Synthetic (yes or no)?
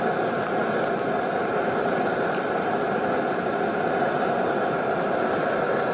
no